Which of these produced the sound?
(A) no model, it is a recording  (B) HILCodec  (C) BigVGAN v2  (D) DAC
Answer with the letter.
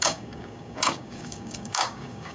D